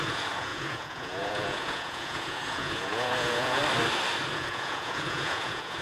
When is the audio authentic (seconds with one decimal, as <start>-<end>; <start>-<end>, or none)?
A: 3.6-4.3